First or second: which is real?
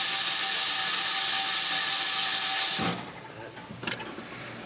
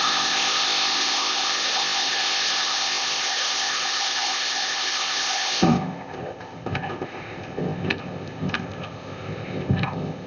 first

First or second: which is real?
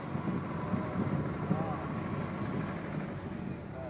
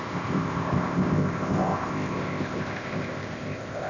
first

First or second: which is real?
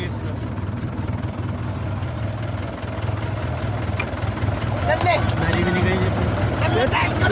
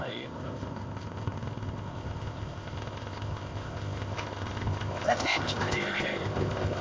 first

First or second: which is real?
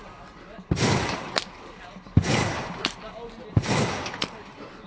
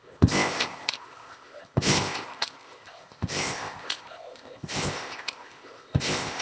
first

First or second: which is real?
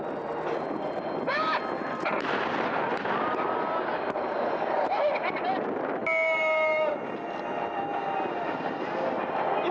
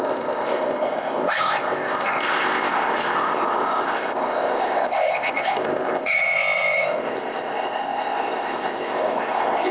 first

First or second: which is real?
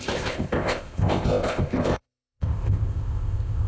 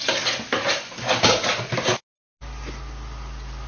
second